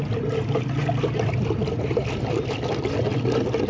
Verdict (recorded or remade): recorded